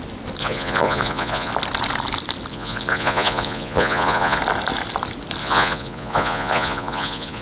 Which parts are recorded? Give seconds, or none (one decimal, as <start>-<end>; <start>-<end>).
0.0-0.4; 1.5-2.5; 4.4-5.4